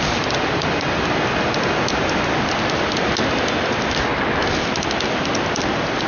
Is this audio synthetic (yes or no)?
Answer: no